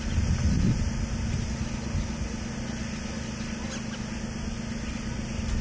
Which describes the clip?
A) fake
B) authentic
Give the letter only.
B